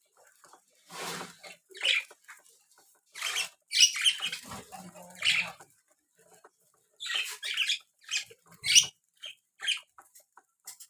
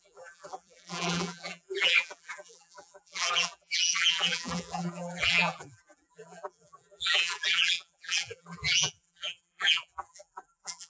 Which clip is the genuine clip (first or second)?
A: first